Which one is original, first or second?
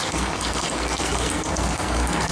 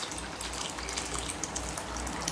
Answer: second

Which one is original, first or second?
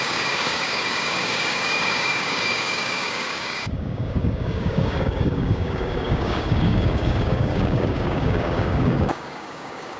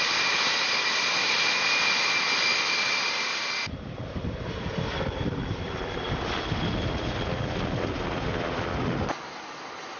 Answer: second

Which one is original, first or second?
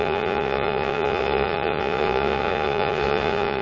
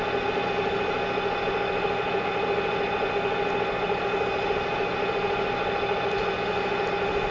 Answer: second